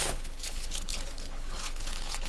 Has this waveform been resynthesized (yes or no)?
yes